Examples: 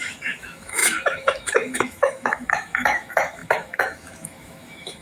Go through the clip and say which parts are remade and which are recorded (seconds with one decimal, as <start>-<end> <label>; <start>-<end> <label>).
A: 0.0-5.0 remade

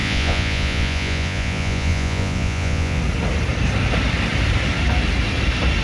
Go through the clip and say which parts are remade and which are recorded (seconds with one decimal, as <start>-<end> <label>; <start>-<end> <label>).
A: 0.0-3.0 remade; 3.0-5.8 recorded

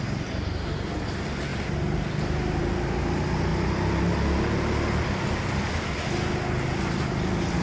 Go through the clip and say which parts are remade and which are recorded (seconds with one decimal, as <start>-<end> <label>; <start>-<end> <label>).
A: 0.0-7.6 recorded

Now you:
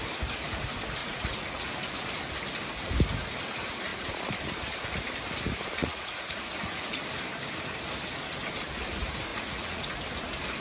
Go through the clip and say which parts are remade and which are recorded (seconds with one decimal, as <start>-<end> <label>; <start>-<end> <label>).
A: 0.0-1.0 recorded; 1.0-1.7 remade; 1.7-5.8 recorded; 5.8-7.0 remade; 7.0-9.3 recorded; 9.3-10.0 remade; 10.0-10.6 recorded

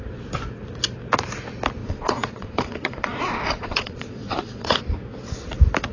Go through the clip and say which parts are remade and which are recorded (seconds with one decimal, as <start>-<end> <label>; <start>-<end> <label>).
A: 0.0-1.8 recorded; 1.8-4.8 remade; 4.8-5.9 recorded

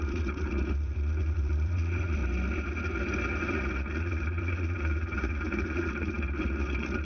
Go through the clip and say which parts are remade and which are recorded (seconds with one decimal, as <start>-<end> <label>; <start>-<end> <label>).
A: 0.0-2.2 remade; 2.2-3.4 recorded; 3.4-7.0 remade

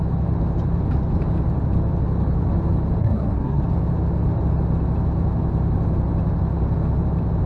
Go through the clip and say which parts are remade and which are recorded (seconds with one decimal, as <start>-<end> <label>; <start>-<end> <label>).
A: 0.0-3.0 recorded; 3.0-3.6 remade; 3.6-7.5 recorded